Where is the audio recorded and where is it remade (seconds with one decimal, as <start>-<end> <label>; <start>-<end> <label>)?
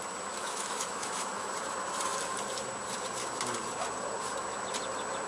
0.0-0.4 recorded; 0.4-1.5 remade; 1.5-5.3 recorded